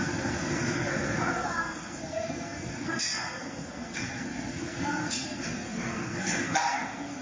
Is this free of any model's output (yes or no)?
no